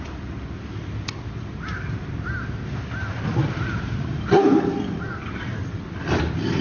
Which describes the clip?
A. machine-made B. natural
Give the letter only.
B